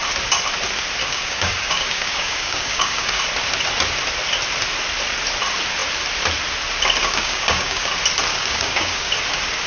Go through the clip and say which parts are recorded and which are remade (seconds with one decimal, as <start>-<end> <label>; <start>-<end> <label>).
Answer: 0.0-1.0 recorded; 1.0-3.2 remade; 3.2-7.0 recorded; 7.0-7.9 remade; 7.9-8.3 recorded; 8.3-9.1 remade; 9.1-9.7 recorded